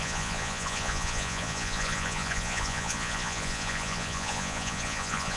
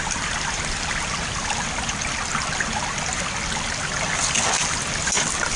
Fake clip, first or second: first